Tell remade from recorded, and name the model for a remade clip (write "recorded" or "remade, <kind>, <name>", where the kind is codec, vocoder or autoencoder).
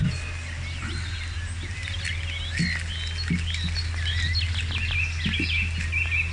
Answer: recorded